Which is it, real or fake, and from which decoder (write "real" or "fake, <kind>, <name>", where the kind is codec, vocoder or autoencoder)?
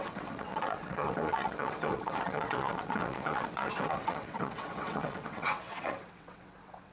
fake, vocoder, WaveNeXt